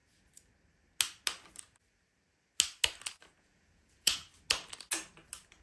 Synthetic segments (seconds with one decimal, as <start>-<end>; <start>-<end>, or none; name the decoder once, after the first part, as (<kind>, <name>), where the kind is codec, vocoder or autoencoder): 3.4-4.3 (vocoder, Vocos)